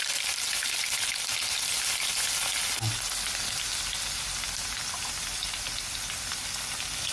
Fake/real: real